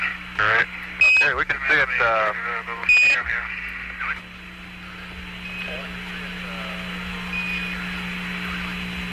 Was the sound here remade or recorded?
recorded